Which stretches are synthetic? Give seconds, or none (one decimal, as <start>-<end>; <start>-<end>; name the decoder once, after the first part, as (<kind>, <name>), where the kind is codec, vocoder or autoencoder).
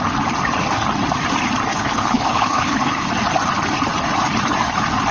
1.7-3.1 (codec, HILCodec)